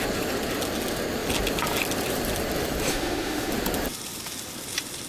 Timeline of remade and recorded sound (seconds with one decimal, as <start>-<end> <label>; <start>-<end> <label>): 0.0-2.9 recorded; 2.9-3.5 remade; 3.5-5.1 recorded